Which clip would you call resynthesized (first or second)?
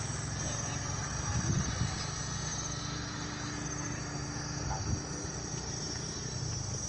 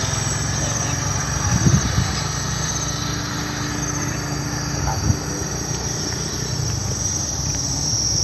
second